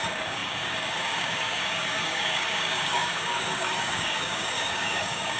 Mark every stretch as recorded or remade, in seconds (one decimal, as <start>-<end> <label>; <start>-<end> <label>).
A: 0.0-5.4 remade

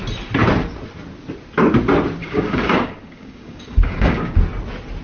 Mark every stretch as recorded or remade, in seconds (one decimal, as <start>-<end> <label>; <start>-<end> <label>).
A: 0.0-2.2 recorded; 2.2-4.4 remade; 4.4-5.0 recorded

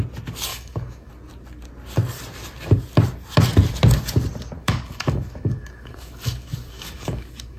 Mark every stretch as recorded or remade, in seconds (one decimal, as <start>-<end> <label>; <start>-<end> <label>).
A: 0.0-0.5 recorded; 0.5-1.1 remade; 1.1-4.6 recorded; 4.6-7.6 remade

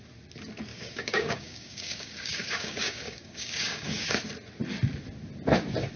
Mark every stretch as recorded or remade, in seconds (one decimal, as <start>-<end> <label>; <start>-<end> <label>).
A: 0.0-0.7 recorded; 0.7-4.2 remade; 4.2-6.0 recorded

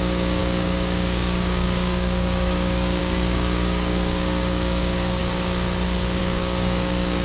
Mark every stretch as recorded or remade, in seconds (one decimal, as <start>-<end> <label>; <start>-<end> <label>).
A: 0.0-5.2 remade; 5.2-6.2 recorded; 6.2-7.2 remade

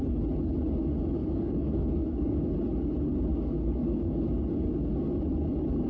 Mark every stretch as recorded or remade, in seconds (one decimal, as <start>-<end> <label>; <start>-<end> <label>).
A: 0.0-1.2 recorded; 1.2-2.4 remade; 2.4-3.3 recorded; 3.3-4.3 remade; 4.3-5.9 recorded

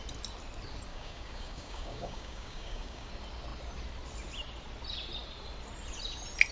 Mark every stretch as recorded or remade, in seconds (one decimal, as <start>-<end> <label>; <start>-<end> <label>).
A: 0.0-0.9 recorded; 0.9-3.1 remade; 3.1-6.5 recorded